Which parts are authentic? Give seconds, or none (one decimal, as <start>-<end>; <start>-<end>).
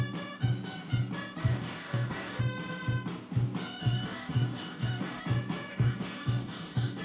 0.0-1.4; 2.4-3.8; 5.2-5.7